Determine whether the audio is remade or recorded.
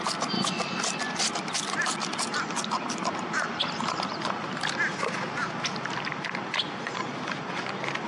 recorded